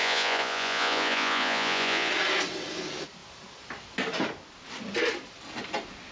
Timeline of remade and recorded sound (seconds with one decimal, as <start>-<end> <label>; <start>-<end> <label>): 0.0-2.1 remade; 2.1-6.1 recorded